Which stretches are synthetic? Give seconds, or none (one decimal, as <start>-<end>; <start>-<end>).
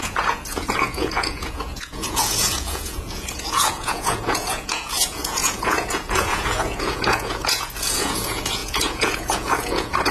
0.0-10.1